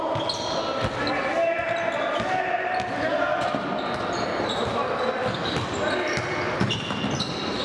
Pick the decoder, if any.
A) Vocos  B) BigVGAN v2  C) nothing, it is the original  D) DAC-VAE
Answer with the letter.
C